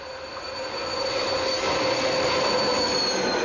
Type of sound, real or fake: real